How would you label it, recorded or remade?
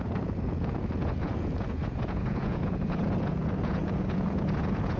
remade